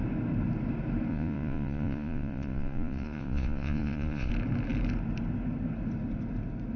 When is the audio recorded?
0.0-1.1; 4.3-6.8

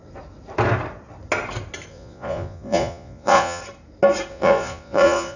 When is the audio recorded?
0.0-1.9; 3.6-4.3

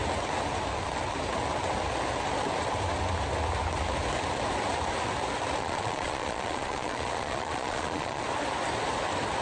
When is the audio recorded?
0.0-5.6; 8.2-9.4

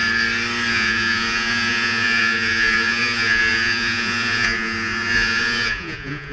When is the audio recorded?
0.0-0.7

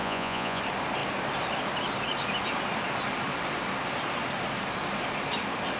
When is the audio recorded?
0.6-5.8

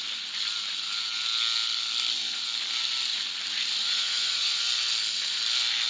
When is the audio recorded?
0.0-3.8; 4.6-5.9

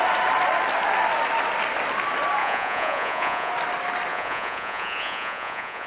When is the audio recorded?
0.0-2.4; 3.5-4.1

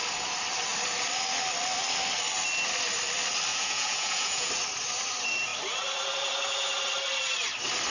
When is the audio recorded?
0.0-3.5; 4.5-7.9